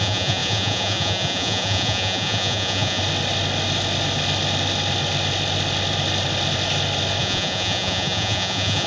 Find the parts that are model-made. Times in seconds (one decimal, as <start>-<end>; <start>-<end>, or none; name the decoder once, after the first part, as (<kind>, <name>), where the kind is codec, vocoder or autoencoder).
0.0-3.0 (vocoder, Vocos); 7.2-8.9